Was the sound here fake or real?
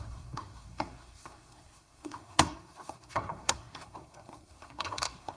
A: fake